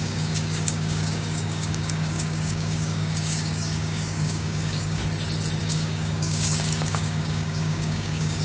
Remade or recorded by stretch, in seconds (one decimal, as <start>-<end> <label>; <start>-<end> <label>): 0.0-5.0 remade; 5.0-5.6 recorded; 5.6-8.4 remade